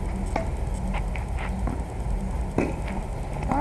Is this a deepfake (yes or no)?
no